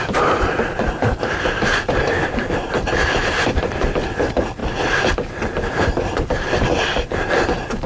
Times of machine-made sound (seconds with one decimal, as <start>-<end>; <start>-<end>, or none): 0.0-4.6; 5.1-7.9